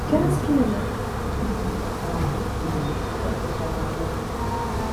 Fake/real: real